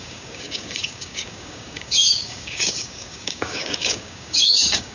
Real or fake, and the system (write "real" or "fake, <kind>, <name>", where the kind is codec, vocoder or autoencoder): fake, codec, DAC